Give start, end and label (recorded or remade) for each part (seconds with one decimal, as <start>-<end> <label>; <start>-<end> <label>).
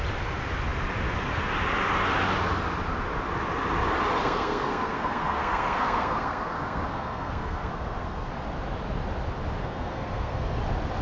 0.0-4.2 recorded; 4.2-8.3 remade; 8.3-9.6 recorded; 9.6-10.6 remade; 10.6-11.0 recorded